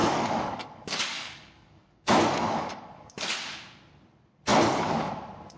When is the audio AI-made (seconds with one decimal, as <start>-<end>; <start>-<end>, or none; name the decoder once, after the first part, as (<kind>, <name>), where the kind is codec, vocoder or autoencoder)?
0.0-3.4 (codec, DAC); 4.5-5.1